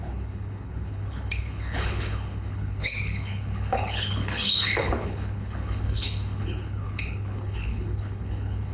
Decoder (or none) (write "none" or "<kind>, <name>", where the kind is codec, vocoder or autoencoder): codec, HILCodec